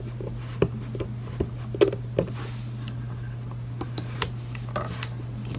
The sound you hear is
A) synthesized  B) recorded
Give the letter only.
B